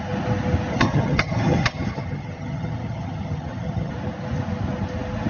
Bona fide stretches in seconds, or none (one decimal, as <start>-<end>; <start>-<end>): 0.0-0.7; 3.9-5.3